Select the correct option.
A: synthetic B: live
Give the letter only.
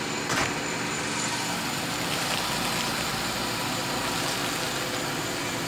B